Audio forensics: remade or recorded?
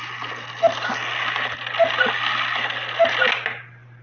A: recorded